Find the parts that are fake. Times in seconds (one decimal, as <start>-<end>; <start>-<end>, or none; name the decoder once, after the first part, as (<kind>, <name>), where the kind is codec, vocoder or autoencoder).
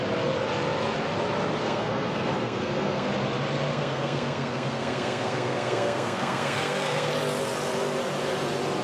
1.6-3.1 (codec, SNAC); 3.7-7.1